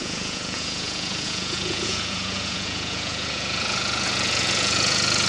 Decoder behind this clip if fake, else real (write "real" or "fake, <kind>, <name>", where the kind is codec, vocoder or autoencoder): fake, vocoder, Vocos